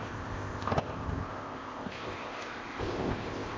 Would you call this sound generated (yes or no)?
yes